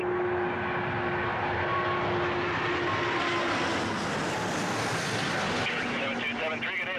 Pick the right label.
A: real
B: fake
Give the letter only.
A